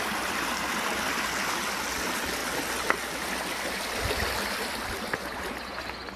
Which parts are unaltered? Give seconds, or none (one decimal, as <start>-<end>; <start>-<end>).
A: 0.0-6.2